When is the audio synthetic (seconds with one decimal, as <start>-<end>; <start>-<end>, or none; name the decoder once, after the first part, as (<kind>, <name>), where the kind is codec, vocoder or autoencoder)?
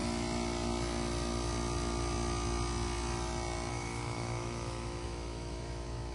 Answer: 3.7-6.1 (autoencoder, DAC-VAE)